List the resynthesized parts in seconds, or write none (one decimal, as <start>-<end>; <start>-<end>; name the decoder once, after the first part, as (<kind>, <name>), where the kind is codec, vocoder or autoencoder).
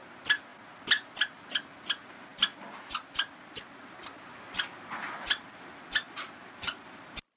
none